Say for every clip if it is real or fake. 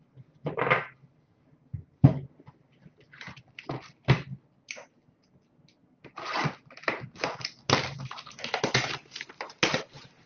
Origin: real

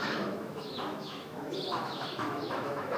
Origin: fake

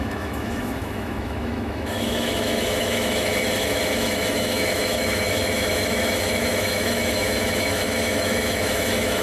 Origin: fake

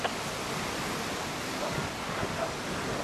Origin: real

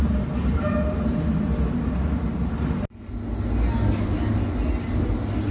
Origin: real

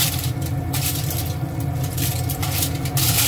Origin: real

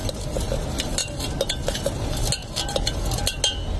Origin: real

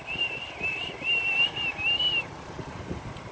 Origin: real